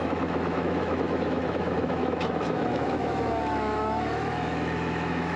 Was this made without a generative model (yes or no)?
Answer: no